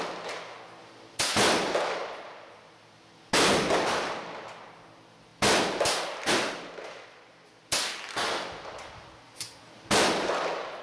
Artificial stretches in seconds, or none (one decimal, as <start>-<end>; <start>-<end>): 0.8-1.9